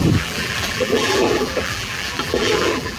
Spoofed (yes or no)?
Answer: yes